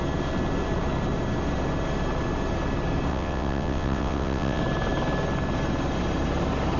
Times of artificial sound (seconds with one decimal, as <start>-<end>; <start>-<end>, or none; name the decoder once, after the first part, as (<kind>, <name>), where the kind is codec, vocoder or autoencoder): 3.1-4.6 (vocoder, WaveNeXt)